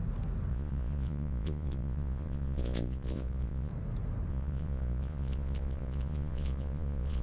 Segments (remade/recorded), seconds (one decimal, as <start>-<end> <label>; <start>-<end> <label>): 0.0-0.5 recorded; 0.5-3.7 remade; 3.7-4.3 recorded; 4.3-7.2 remade